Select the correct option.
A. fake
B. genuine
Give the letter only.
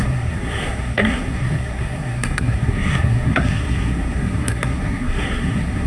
A